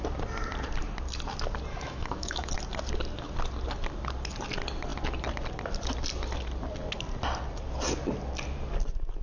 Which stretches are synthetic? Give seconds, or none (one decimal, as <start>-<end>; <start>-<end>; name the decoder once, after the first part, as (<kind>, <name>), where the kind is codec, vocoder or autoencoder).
1.7-2.5 (autoencoder, DAC-VAE)